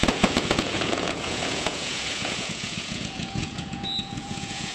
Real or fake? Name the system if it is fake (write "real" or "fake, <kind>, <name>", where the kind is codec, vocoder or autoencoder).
fake, vocoder, Vocos